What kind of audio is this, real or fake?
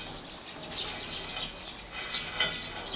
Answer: real